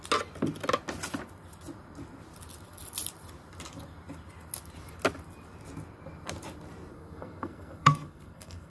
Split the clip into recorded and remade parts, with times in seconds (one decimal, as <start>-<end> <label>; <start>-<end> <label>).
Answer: 0.0-6.9 recorded; 6.9-8.7 remade